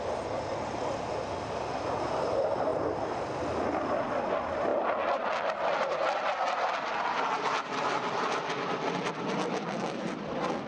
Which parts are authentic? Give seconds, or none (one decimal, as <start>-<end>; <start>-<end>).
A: 0.0-10.7

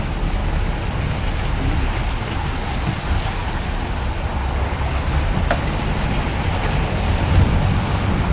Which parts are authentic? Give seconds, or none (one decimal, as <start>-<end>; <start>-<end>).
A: 0.0-8.3

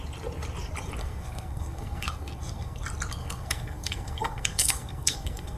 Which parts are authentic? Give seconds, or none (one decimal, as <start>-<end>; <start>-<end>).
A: 0.0-1.0; 2.8-3.2

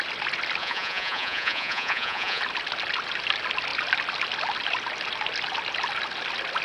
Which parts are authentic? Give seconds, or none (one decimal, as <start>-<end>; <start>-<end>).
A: 0.0-0.6; 2.4-6.6

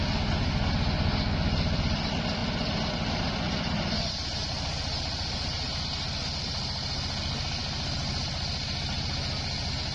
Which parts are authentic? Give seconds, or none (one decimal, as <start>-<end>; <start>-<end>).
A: 0.0-9.9